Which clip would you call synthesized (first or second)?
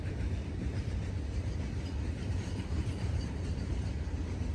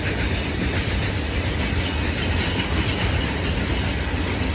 first